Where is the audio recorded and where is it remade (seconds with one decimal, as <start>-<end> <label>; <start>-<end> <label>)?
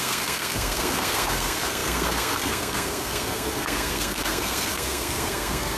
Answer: 0.0-5.8 remade